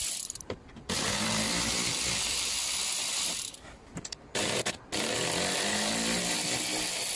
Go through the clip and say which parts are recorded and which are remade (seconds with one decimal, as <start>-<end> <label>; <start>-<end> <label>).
0.0-7.2 recorded